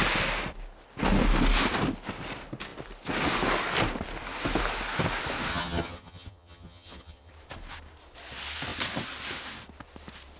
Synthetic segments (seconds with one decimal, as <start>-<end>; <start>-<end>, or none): 5.5-7.3